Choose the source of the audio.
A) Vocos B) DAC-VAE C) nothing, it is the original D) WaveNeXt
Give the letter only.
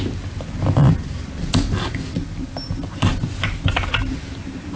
C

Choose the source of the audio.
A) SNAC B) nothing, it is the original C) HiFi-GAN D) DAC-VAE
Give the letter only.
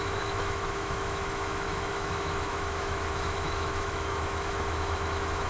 D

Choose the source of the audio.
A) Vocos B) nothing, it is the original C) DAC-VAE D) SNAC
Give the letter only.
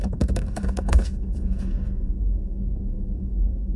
D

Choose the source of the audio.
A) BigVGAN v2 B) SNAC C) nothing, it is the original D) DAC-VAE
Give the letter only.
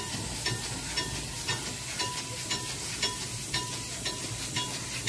C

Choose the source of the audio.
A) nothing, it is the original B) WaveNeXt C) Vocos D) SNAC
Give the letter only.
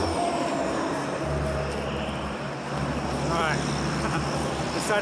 A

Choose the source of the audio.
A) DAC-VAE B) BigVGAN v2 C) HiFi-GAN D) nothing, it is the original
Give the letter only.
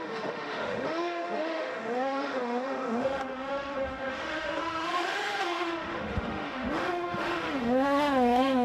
A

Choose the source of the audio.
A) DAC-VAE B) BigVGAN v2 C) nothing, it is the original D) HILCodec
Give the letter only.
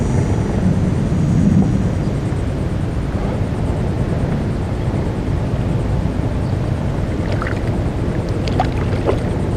C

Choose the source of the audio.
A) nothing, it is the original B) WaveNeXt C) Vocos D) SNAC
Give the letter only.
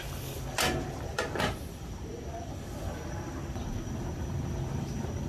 A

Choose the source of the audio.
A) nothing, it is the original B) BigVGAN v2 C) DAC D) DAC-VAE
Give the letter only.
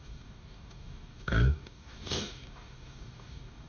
C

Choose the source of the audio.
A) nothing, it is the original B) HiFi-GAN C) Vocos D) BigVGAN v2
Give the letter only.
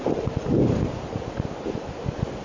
A